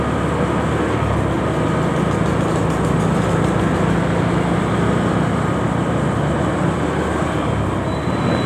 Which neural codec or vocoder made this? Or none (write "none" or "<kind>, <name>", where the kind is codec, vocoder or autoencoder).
none